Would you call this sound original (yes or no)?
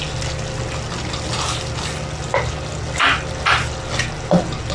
yes